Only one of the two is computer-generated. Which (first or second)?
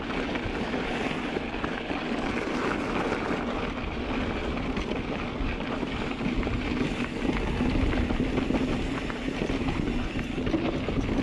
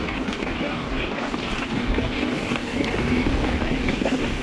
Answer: second